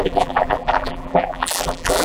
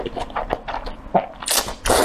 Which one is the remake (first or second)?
first